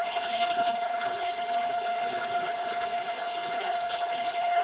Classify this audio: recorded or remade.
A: remade